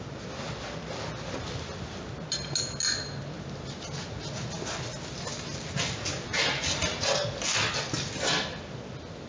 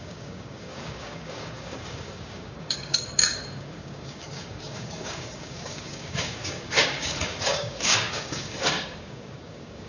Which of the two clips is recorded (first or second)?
first